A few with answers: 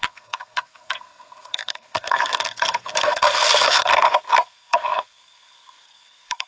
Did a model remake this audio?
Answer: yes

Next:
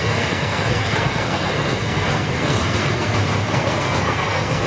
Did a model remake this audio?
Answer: yes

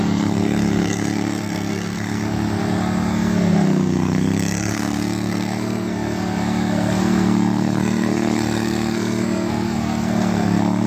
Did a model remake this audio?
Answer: yes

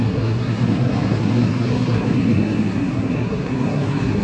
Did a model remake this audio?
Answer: yes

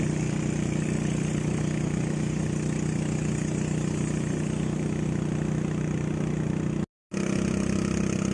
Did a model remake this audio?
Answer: no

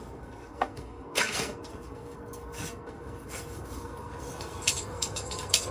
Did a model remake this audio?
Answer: yes